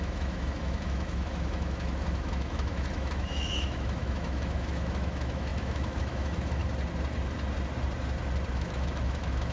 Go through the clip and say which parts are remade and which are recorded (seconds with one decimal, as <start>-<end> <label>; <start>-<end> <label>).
0.0-6.6 remade; 6.6-8.5 recorded; 8.5-9.5 remade